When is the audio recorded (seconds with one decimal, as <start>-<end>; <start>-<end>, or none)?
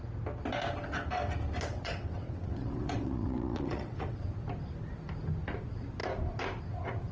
0.0-1.7; 4.2-7.1